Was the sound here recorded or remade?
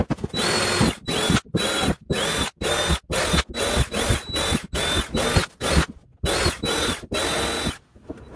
recorded